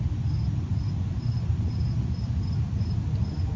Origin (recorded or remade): recorded